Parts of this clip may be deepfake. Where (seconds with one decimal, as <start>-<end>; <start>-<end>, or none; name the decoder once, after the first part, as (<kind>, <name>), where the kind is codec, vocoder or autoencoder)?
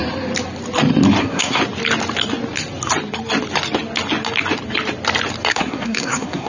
1.2-1.6 (codec, SNAC); 5.5-6.5